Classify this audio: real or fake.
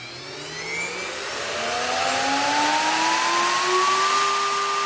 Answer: real